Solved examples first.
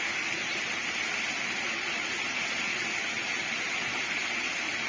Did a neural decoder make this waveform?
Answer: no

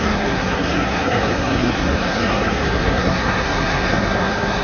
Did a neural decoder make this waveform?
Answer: yes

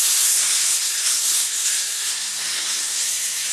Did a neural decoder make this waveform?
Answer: yes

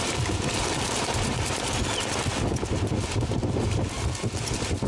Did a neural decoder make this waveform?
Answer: no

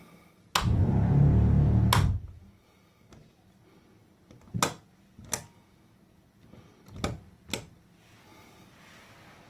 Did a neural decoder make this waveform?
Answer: no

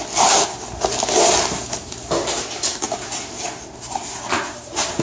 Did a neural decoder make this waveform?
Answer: no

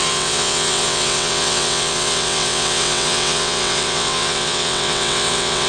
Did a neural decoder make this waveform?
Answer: yes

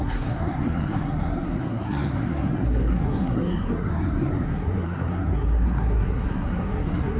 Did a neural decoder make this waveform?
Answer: yes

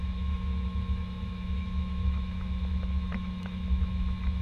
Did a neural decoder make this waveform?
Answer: yes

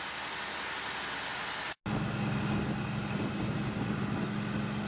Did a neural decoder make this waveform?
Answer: no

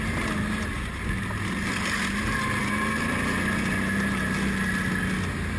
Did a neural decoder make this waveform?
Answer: no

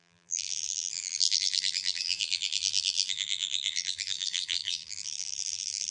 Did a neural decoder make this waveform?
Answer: yes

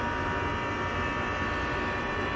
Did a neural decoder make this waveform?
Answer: no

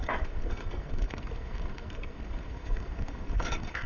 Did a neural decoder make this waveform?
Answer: yes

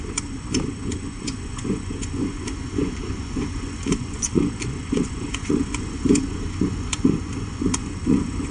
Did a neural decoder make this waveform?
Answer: yes